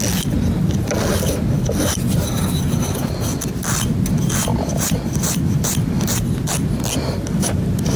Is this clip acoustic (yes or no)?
yes